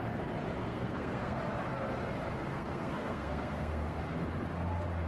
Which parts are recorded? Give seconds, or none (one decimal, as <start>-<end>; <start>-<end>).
0.0-0.6; 1.4-2.5; 4.0-5.1